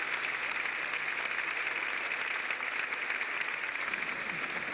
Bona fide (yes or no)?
yes